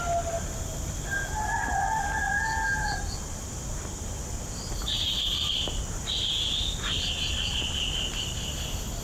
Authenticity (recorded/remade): recorded